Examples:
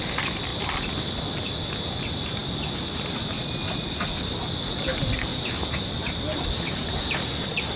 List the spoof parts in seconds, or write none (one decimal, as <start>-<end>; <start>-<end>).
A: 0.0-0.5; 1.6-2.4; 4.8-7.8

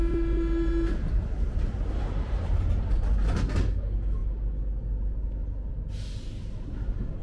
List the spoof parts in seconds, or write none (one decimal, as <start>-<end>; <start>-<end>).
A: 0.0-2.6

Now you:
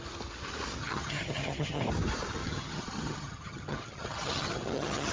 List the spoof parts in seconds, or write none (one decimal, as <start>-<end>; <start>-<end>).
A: 0.8-1.8; 2.4-5.1

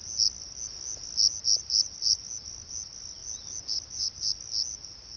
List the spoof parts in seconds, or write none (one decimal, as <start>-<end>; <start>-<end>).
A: none

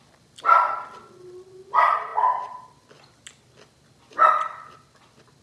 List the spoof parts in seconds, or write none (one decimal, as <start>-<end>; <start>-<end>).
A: none

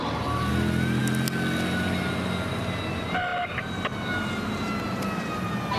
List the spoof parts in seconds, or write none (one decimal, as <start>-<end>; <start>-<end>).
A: 0.0-0.5